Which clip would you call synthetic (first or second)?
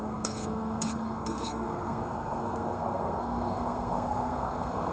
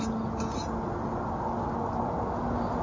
first